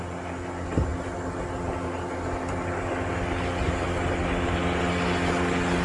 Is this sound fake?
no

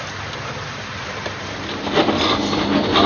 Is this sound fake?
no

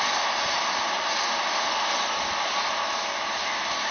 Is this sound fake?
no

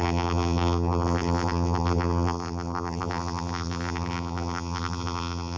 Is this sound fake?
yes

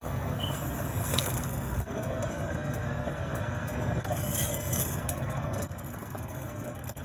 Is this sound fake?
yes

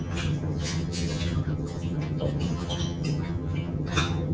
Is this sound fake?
yes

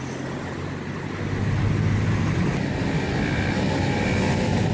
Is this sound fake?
no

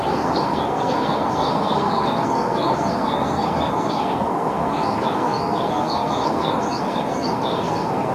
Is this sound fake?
yes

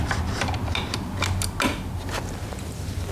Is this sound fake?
no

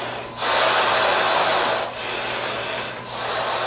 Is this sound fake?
no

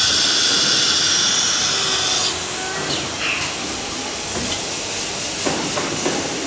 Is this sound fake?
no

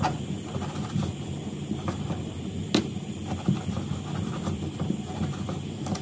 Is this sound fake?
no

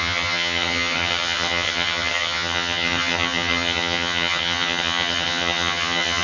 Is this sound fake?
yes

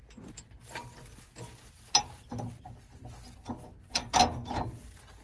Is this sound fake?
no